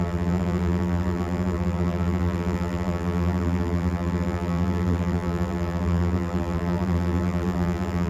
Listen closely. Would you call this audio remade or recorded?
remade